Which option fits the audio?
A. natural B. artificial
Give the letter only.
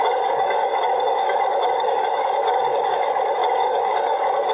B